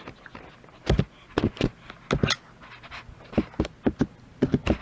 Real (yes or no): yes